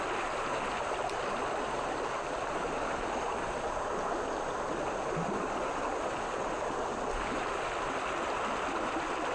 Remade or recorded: recorded